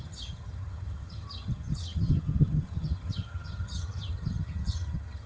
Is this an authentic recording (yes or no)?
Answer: no